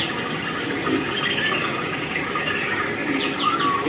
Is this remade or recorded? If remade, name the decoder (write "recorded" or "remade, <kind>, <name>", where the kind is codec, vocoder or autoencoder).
recorded